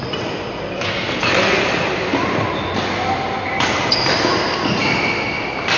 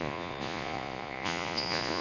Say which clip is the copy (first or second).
second